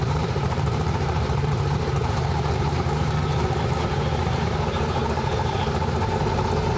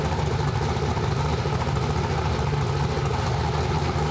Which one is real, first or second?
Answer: second